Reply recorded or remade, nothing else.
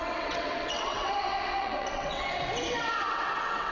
remade